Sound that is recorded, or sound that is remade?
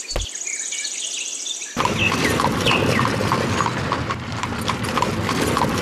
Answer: recorded